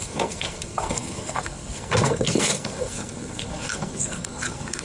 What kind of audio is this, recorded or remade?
remade